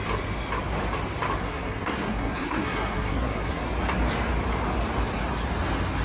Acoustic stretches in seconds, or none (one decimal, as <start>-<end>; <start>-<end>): 0.0-1.4; 3.7-6.0